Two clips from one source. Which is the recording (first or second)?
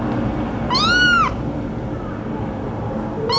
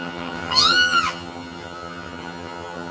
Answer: first